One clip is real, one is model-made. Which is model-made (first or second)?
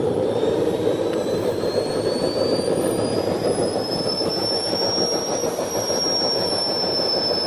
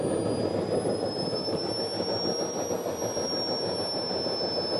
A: first